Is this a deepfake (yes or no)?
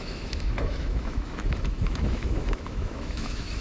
yes